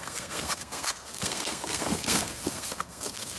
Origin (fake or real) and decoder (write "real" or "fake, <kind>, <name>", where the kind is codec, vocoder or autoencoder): fake, codec, SNAC